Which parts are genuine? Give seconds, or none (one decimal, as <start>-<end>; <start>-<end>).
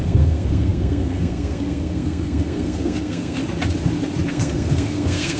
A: 3.4-4.3